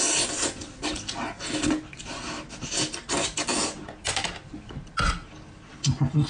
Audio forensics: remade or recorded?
recorded